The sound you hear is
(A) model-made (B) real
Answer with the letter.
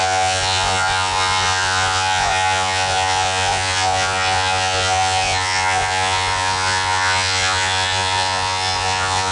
A